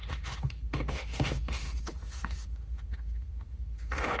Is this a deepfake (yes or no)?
yes